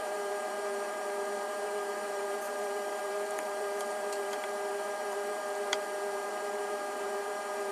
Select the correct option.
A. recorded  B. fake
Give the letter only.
B